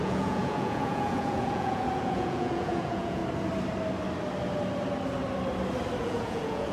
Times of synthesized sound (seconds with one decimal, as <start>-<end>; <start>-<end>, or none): 0.0-3.2; 6.0-6.7